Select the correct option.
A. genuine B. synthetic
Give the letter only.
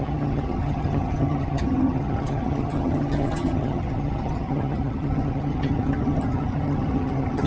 B